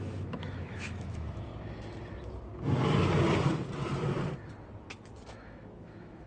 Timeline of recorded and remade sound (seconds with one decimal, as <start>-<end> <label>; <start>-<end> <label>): 0.0-1.5 remade; 1.5-5.3 recorded; 5.3-6.3 remade